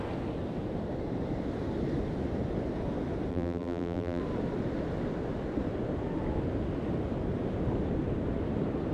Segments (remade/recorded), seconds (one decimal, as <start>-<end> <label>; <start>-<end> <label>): 0.0-3.3 recorded; 3.3-4.2 remade; 4.2-8.9 recorded